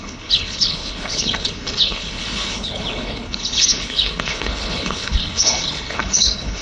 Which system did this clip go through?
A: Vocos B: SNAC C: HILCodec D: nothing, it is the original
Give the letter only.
C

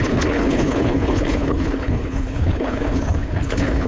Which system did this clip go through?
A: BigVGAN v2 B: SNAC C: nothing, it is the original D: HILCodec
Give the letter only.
D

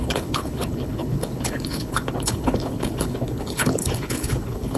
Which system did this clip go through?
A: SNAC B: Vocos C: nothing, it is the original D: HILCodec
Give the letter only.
D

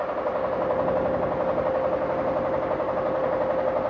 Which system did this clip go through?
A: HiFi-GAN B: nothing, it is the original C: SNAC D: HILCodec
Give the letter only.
B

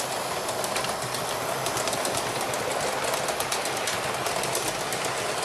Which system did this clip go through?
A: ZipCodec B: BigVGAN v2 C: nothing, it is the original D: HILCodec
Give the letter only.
C